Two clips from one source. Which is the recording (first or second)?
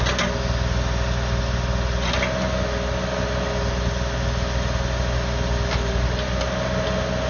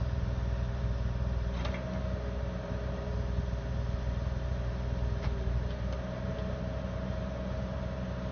first